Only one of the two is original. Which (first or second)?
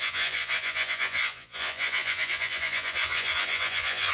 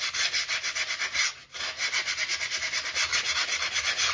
second